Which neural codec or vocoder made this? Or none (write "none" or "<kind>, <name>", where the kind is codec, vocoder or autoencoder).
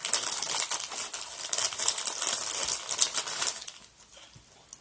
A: none